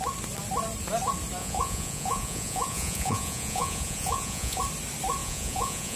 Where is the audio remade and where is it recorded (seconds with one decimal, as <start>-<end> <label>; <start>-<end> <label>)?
0.0-1.4 recorded; 1.4-4.6 remade; 4.6-5.2 recorded; 5.2-6.0 remade